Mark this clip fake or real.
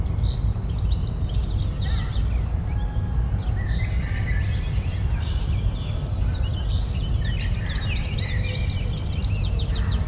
real